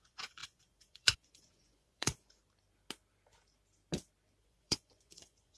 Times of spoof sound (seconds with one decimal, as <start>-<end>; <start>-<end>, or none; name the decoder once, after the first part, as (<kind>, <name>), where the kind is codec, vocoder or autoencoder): 0.0-2.4 (vocoder, Vocos); 4.4-5.6